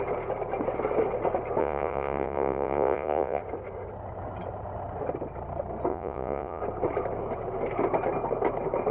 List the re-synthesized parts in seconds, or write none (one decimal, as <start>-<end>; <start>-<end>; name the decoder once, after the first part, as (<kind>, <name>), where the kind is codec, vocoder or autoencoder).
1.6-3.4 (vocoder, Vocos); 5.9-6.6